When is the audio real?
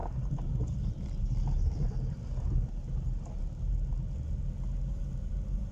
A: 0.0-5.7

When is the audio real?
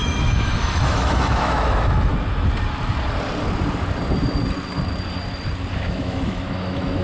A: 2.1-5.7